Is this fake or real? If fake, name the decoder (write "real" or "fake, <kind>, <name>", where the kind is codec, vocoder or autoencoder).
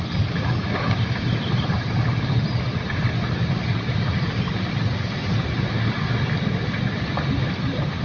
real